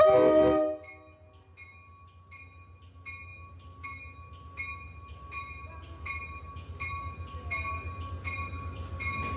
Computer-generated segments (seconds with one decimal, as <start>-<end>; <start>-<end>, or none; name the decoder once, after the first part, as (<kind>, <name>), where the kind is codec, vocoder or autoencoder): none